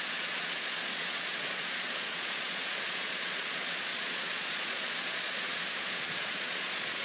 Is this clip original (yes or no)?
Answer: no